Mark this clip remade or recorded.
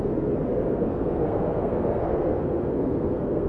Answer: remade